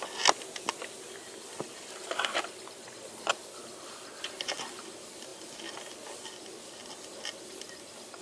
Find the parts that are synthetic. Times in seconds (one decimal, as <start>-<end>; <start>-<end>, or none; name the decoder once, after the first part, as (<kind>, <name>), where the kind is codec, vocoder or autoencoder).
2.8-3.3 (vocoder, Vocos)